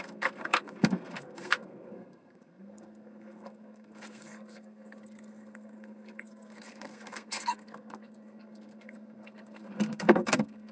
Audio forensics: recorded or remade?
remade